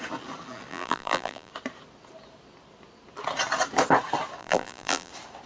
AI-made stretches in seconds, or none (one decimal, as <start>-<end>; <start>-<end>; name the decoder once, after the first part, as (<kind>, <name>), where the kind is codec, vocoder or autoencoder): 0.7-1.5 (vocoder, BigVGAN v2); 4.4-5.1